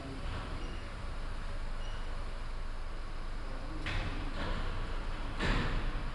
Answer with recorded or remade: recorded